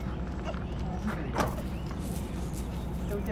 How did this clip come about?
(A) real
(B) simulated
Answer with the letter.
B